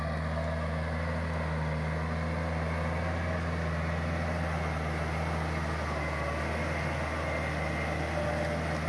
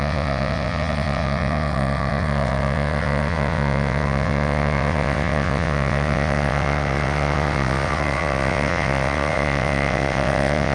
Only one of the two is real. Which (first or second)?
first